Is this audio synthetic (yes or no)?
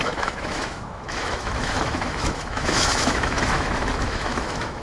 yes